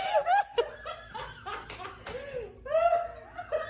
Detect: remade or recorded recorded